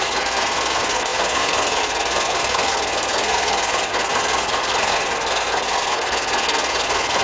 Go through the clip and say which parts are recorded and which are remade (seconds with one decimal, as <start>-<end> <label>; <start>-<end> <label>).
0.0-7.2 remade